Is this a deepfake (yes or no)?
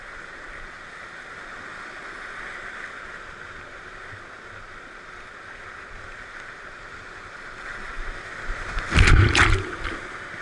no